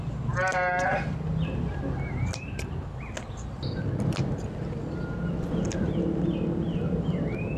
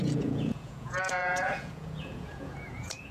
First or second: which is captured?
first